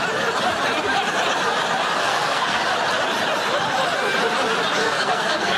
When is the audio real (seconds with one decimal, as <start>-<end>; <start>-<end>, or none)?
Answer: 0.0-2.0; 2.6-4.8